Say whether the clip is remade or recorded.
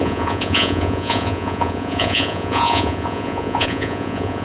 remade